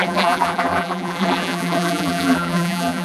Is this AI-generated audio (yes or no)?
yes